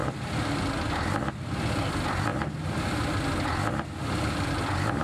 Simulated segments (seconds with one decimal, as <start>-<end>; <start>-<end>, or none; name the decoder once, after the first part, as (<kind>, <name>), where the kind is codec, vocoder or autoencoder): 1.3-2.3 (vocoder, BigVGAN v2); 4.0-5.0